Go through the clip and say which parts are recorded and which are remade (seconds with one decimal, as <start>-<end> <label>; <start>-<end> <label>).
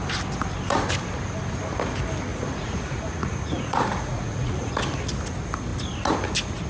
0.0-2.3 recorded; 2.3-4.7 remade; 4.7-6.7 recorded